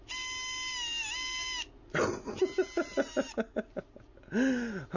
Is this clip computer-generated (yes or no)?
no